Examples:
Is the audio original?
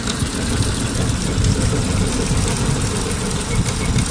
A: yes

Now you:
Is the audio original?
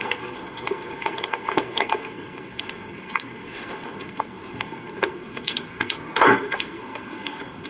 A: no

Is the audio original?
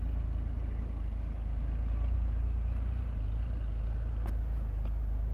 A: yes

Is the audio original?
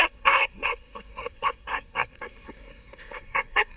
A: no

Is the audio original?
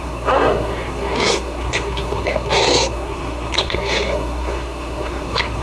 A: no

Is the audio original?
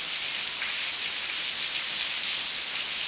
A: yes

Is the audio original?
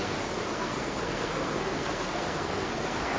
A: no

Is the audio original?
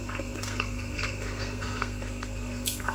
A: no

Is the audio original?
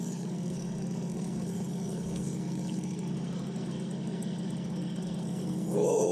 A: no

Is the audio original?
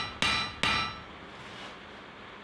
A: yes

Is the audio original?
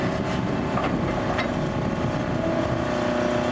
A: yes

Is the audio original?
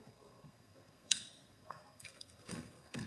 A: no